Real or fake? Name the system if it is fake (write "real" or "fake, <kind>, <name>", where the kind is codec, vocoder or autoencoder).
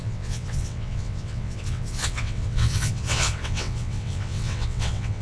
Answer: fake, vocoder, WaveNeXt